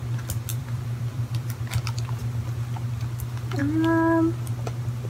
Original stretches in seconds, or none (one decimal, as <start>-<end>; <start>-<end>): 0.0-0.5; 1.6-5.1